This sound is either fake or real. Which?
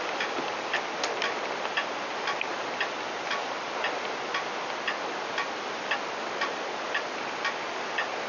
real